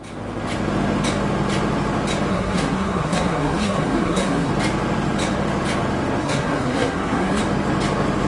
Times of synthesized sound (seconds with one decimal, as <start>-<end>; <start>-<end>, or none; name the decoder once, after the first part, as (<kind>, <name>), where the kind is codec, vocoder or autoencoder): 2.3-4.5 (codec, SNAC); 6.2-7.4

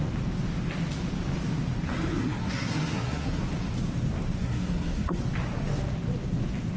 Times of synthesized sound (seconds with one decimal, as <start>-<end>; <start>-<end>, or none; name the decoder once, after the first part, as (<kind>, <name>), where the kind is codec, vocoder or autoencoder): 2.2-3.4 (codec, SNAC); 4.4-5.2

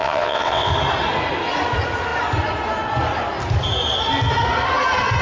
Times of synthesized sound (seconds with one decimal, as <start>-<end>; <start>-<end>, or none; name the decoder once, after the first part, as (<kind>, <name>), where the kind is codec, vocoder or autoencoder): 0.0-0.7 (vocoder, WaveNeXt)

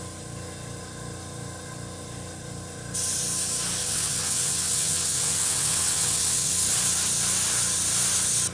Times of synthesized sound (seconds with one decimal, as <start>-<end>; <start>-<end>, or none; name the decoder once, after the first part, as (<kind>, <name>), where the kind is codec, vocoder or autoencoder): 3.8-6.5 (vocoder, WaveNeXt)

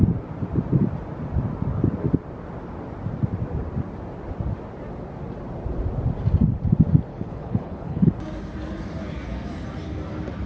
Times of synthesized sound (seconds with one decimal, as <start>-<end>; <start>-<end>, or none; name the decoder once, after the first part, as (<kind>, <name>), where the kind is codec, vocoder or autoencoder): 7.1-8.1 (codec, HILCodec)

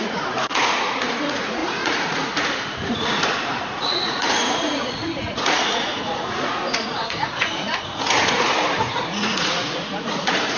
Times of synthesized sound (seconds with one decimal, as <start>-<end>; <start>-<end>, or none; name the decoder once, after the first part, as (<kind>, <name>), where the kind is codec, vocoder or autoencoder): 0.0-10.6 (vocoder, Vocos)

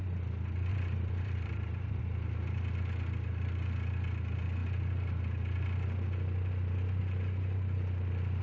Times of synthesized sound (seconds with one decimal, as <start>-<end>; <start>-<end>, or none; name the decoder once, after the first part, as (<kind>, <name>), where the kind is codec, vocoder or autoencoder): 0.7-2.0 (vocoder, BigVGAN v2)